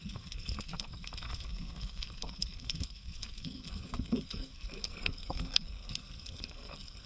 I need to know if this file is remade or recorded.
remade